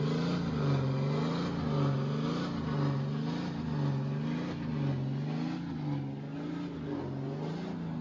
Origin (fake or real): real